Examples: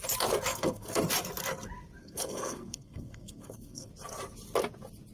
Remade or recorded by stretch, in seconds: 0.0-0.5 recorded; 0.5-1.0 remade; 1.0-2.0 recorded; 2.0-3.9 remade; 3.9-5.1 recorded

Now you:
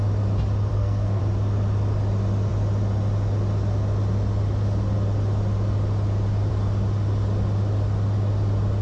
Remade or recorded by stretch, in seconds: 0.0-0.7 recorded; 0.7-1.2 remade; 1.2-8.8 recorded